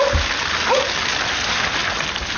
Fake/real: real